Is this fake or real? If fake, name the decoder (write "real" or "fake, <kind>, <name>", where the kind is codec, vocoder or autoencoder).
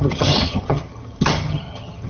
fake, vocoder, HiFi-GAN